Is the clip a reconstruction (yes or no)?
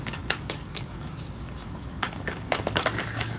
yes